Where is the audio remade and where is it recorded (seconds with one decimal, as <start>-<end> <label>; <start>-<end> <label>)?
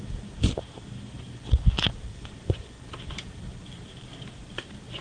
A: 0.0-2.1 recorded; 2.1-2.8 remade; 2.8-5.0 recorded